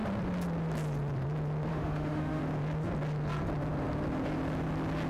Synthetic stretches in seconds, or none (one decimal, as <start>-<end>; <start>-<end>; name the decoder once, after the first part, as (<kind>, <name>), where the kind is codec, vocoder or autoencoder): 1.7-2.4 (autoencoder, DAC-VAE)